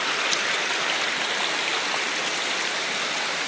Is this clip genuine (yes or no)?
yes